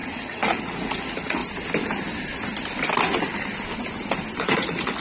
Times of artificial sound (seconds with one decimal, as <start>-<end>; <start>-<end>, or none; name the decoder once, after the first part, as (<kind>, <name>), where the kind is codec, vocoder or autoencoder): 0.0-1.4 (vocoder, Vocos); 4.4-5.0